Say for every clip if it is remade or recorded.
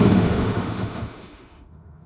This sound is remade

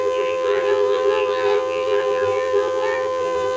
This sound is remade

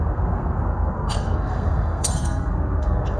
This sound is remade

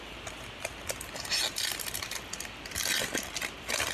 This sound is recorded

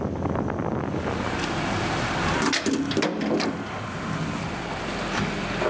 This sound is recorded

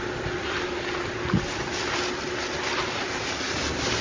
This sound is recorded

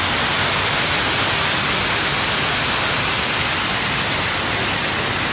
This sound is recorded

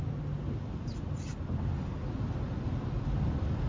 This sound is recorded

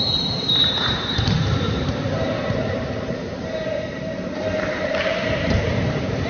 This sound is remade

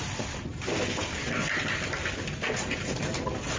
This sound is recorded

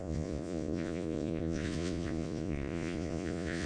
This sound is remade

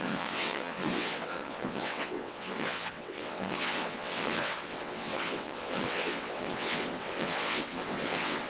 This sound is remade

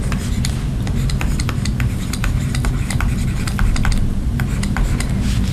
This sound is recorded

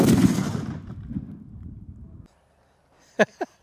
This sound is recorded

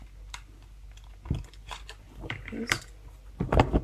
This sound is recorded